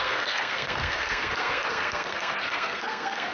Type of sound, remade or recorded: remade